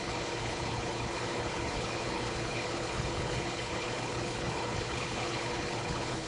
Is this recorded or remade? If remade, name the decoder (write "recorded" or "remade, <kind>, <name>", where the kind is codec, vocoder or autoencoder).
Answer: remade, codec, HILCodec